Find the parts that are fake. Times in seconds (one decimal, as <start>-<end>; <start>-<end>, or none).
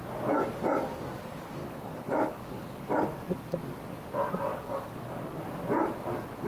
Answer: 1.6-2.9; 4.5-5.4